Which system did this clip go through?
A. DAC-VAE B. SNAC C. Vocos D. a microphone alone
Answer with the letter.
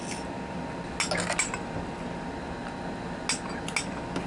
D